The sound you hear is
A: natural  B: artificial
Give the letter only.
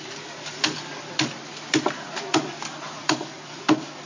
A